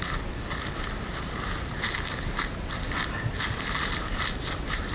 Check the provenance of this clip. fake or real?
real